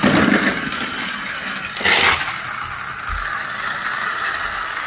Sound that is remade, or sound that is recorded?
recorded